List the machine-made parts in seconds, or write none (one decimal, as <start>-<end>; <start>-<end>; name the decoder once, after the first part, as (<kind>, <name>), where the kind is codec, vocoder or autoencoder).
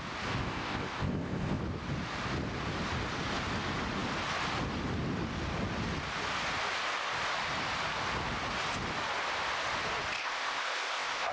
0.4-1.6 (codec, ZipCodec); 10.2-11.3